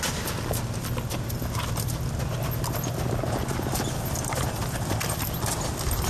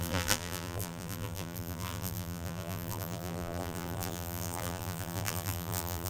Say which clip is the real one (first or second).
first